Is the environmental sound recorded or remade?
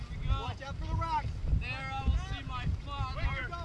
recorded